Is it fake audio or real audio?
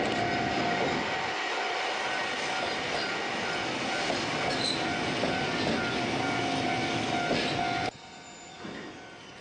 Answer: real